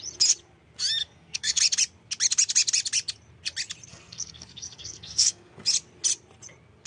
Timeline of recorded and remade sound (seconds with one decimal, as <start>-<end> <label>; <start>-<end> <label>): 0.0-1.0 recorded; 1.0-1.6 remade; 1.6-3.9 recorded; 3.9-5.6 remade; 5.6-6.9 recorded